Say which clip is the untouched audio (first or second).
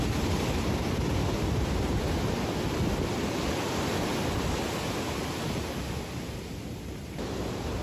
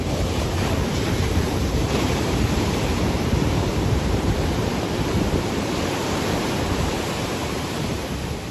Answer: first